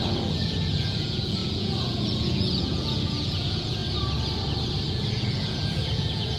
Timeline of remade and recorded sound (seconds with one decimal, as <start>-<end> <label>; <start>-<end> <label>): 0.0-3.8 remade; 3.8-4.9 recorded; 4.9-6.4 remade

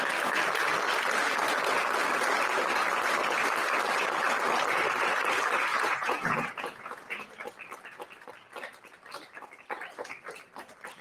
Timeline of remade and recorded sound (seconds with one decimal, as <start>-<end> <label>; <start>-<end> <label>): 0.0-5.7 recorded; 5.7-7.3 remade; 7.3-11.0 recorded

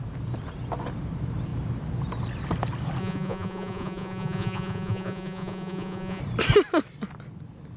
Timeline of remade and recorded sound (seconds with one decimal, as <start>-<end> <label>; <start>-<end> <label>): 0.0-3.0 recorded; 3.0-6.2 remade; 6.2-7.8 recorded

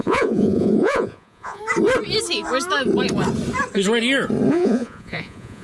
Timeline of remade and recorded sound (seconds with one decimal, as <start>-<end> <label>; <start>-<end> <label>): 0.0-1.6 remade; 1.6-4.5 recorded; 4.5-5.6 remade